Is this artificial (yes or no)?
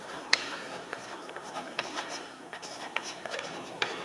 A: yes